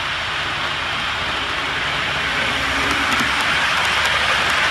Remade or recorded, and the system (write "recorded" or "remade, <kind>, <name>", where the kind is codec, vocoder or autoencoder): recorded